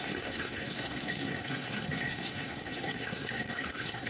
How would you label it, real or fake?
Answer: fake